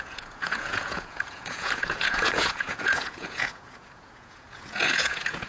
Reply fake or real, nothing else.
fake